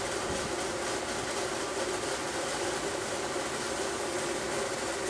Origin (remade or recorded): recorded